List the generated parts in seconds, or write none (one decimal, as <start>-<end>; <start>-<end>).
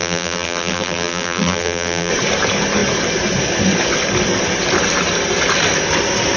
0.0-2.1